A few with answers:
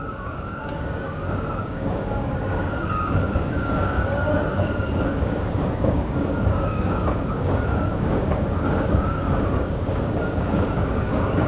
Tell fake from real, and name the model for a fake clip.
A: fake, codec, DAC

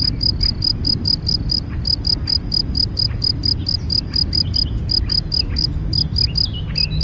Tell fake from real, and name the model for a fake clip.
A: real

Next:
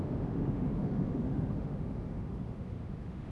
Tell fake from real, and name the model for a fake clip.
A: fake, autoencoder, DAC-VAE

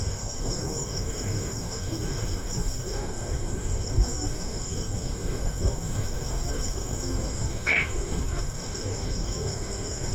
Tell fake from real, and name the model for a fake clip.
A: fake, codec, DAC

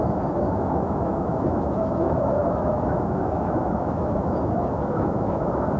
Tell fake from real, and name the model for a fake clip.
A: fake, autoencoder, DAC-VAE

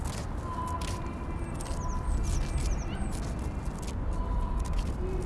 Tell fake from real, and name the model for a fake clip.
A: real